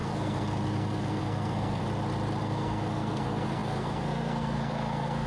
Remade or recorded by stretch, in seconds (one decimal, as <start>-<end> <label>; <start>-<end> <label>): 0.0-1.8 remade; 1.8-2.4 recorded; 2.4-5.3 remade